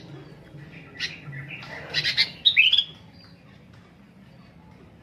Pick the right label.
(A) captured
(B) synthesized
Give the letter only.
A